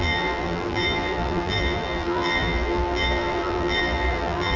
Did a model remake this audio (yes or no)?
yes